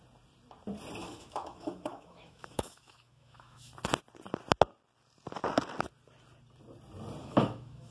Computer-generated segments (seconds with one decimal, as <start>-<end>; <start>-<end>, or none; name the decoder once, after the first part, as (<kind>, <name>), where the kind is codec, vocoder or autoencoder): 1.0-3.7 (autoencoder, DAC-VAE); 7.2-7.9